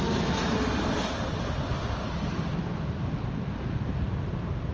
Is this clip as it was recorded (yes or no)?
yes